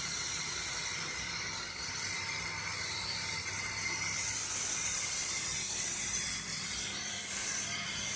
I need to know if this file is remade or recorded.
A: remade